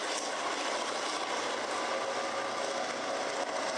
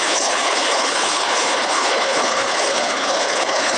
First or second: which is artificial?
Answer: second